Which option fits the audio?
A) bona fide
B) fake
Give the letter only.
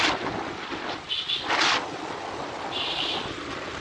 A